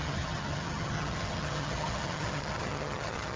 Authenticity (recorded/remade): remade